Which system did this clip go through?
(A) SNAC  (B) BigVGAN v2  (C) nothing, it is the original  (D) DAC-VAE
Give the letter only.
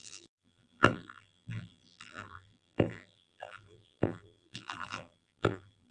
B